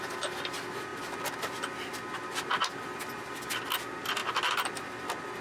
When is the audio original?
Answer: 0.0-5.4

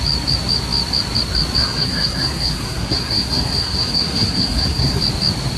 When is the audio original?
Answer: 0.0-1.6; 5.0-5.6

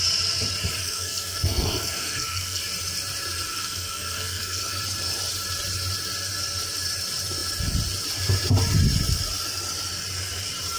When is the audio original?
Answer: 0.0-0.8; 2.6-3.5; 4.8-10.8

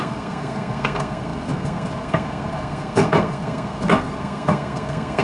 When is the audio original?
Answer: none

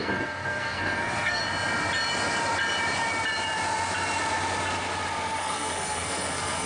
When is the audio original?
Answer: 1.4-5.4

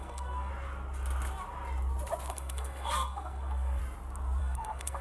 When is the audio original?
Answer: 0.5-2.3; 3.8-4.4